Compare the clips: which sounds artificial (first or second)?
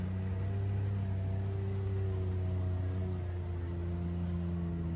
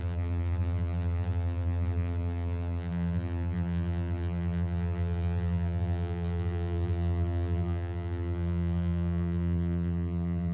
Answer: second